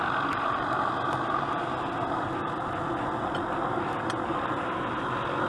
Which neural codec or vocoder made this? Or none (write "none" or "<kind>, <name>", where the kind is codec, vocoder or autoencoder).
none